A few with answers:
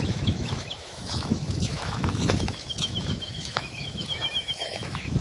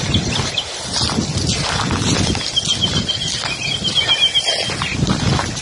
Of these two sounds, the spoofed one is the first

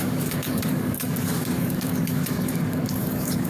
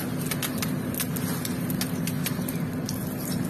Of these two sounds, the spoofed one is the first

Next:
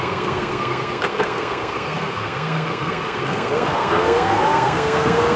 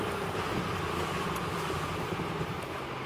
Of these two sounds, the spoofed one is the first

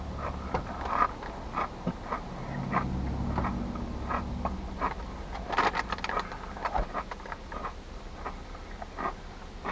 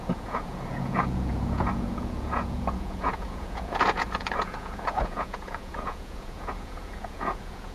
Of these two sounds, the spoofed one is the second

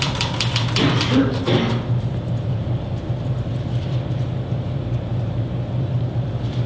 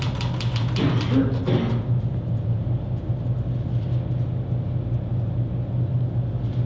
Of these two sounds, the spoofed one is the first